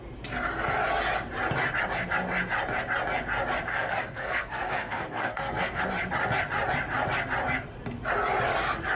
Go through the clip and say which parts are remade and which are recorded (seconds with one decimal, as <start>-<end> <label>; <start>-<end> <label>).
0.0-3.7 recorded; 3.7-5.8 remade; 5.8-9.0 recorded